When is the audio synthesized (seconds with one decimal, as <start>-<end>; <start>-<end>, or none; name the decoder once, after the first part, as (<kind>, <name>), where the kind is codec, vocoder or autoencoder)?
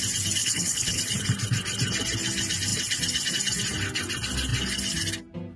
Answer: 0.4-1.0 (codec, HILCodec)